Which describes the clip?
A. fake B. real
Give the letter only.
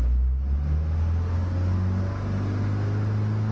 B